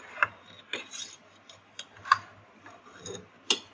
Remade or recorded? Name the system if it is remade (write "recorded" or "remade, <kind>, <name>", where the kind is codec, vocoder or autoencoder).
recorded